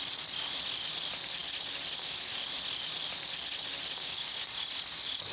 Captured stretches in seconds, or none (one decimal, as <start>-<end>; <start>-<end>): 0.0-5.3